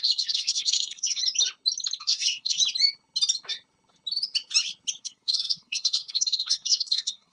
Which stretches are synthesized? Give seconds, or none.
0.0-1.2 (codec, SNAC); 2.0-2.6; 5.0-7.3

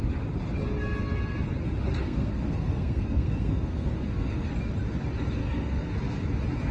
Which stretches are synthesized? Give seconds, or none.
2.0-4.5 (codec, SNAC); 5.4-5.9

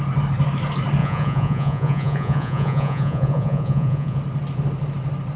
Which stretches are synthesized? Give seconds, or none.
1.0-4.2 (vocoder, Vocos)